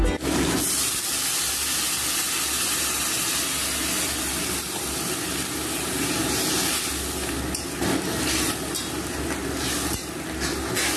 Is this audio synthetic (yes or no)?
no